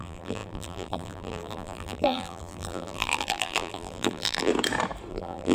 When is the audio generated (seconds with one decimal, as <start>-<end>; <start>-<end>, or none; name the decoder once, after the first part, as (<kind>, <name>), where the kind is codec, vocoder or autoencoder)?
0.0-4.5 (vocoder, BigVGAN v2); 5.1-5.5